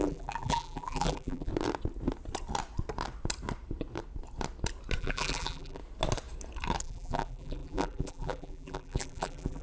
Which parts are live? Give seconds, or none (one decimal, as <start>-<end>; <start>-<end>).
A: 1.5-5.0; 5.8-6.8